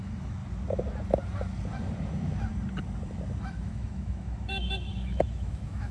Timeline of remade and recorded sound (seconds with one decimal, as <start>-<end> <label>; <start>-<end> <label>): 0.0-0.4 remade; 0.4-3.4 recorded; 3.4-5.9 remade